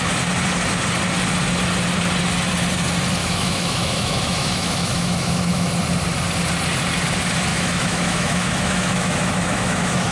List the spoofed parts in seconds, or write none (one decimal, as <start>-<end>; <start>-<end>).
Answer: 3.2-5.7; 7.5-10.1